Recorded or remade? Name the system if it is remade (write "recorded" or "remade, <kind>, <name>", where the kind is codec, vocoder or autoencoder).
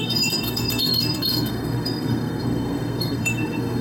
remade, codec, SNAC